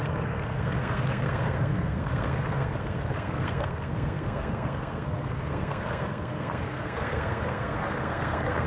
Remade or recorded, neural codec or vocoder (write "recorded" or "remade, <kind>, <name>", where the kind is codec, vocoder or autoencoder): remade, codec, SNAC